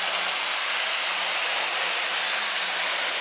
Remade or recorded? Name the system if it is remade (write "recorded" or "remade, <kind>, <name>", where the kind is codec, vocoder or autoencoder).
recorded